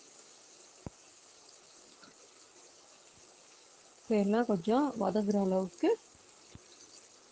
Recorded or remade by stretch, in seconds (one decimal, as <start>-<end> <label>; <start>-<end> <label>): 0.0-1.9 remade; 1.9-2.7 recorded; 2.7-6.1 remade; 6.1-7.3 recorded